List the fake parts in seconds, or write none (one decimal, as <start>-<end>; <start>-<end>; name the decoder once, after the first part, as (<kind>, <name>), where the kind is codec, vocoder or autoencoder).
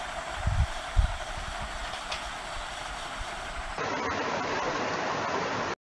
none